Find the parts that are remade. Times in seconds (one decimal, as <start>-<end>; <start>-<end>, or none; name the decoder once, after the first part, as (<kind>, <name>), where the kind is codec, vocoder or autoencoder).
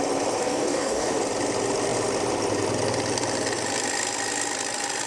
0.4-1.2 (codec, DAC)